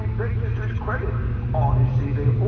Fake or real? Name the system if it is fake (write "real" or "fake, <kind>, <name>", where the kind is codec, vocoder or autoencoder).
real